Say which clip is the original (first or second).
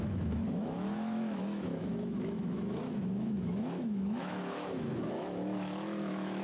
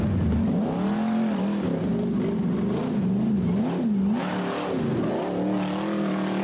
second